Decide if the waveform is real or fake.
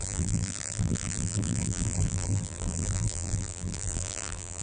fake